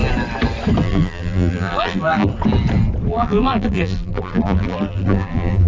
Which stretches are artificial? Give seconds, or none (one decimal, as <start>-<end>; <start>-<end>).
0.8-2.3; 3.1-5.7